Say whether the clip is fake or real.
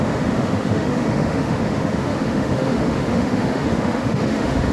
fake